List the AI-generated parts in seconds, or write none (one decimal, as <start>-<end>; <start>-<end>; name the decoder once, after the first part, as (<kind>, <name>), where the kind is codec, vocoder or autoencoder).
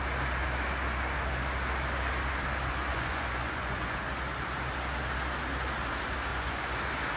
2.9-4.0 (vocoder, Vocos); 6.3-6.8